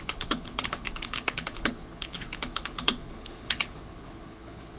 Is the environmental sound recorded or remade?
remade